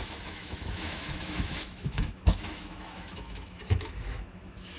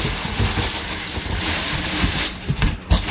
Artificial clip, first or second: first